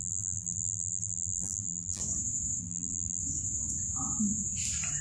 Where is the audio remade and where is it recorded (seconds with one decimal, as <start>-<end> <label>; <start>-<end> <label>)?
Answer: 0.0-2.0 remade; 2.0-2.6 recorded; 2.6-3.2 remade; 3.2-5.0 recorded